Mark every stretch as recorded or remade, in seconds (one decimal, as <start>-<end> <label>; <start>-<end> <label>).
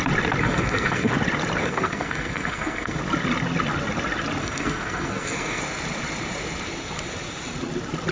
0.0-0.4 recorded; 0.4-1.1 remade; 1.1-1.6 recorded; 1.6-3.0 remade; 3.0-4.4 recorded; 4.4-5.6 remade; 5.6-8.1 recorded